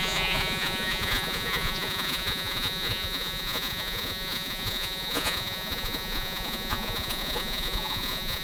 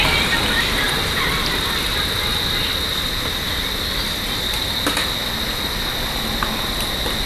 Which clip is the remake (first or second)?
first